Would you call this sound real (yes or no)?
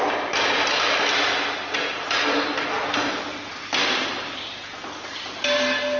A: yes